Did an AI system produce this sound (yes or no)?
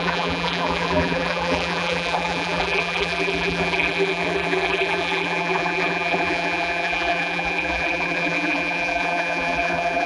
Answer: yes